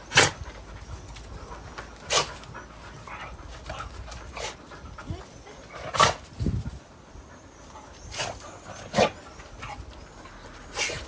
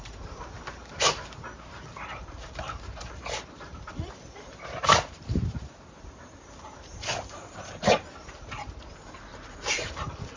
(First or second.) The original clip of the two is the first